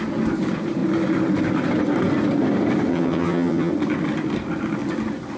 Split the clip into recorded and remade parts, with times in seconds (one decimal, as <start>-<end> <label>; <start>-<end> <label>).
0.0-2.9 recorded; 2.9-3.7 remade; 3.7-5.4 recorded